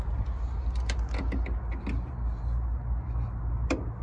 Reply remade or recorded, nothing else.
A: recorded